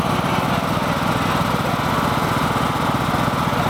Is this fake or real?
real